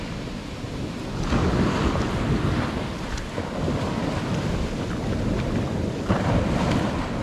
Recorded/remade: recorded